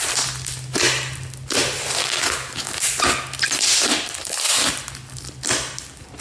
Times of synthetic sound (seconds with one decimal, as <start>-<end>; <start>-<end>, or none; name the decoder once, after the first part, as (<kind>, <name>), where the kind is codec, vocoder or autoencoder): 2.0-2.7 (codec, DAC)